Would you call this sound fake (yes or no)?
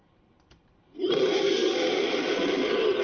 no